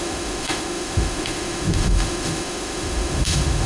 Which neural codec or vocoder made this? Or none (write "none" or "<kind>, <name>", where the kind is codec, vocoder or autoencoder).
autoencoder, DAC-VAE